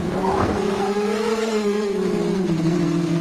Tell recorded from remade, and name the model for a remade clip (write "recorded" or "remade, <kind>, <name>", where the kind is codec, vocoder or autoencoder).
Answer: remade, codec, SNAC